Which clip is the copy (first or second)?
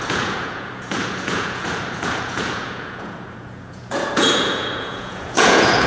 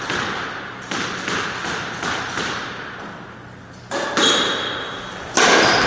first